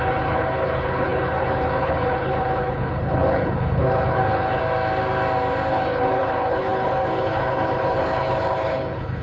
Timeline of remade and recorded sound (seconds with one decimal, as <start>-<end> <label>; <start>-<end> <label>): 0.0-4.6 remade; 4.6-5.7 recorded; 5.7-9.2 remade